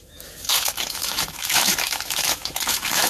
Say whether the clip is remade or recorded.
remade